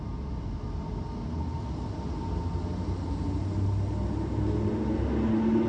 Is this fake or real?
real